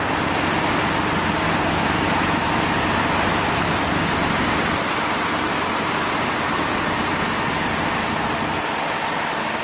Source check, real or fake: real